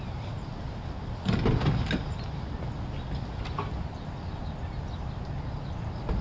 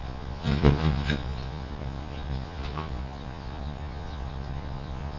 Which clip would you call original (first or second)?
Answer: first